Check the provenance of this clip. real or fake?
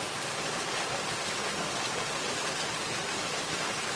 real